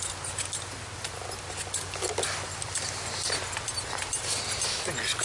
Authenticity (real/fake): real